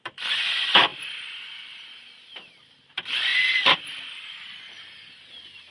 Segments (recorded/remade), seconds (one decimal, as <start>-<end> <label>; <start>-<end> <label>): 0.0-5.7 recorded